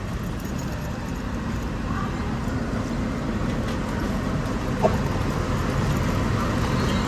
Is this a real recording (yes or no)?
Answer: yes